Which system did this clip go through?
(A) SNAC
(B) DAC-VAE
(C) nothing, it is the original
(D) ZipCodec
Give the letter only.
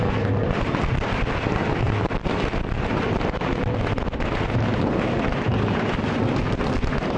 C